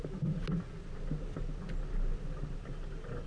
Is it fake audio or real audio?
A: real